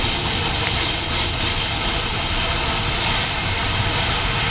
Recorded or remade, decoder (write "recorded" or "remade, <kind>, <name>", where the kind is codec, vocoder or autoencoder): recorded